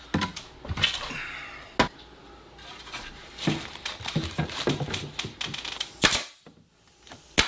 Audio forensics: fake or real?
real